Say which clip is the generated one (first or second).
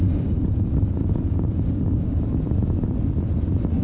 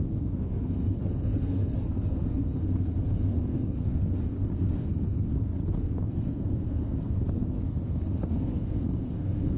second